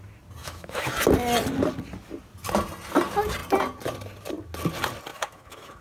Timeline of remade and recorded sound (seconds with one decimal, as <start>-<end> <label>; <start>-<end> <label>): 0.0-0.4 recorded; 0.4-0.9 remade; 0.9-5.1 recorded; 5.1-5.8 remade

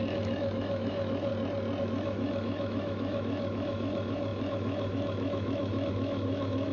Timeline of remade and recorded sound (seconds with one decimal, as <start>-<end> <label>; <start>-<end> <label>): 0.0-1.3 remade; 1.3-1.8 recorded; 1.8-6.7 remade

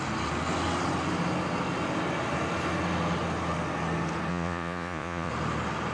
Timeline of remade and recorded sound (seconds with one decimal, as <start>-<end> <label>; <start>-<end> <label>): 0.0-4.3 recorded; 4.3-5.3 remade; 5.3-5.9 recorded

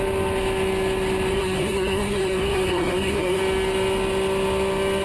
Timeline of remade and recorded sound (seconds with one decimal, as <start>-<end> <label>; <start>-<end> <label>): 0.0-1.3 recorded; 1.3-3.4 remade; 3.4-5.0 recorded

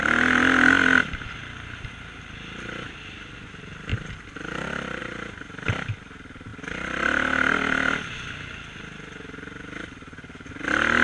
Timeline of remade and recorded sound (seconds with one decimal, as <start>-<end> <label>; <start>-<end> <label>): 0.0-11.0 recorded